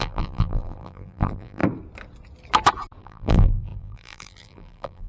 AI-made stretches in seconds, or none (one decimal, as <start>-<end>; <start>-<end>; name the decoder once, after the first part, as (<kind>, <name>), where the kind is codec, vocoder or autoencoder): 0.0-1.6 (vocoder, BigVGAN v2); 3.0-5.1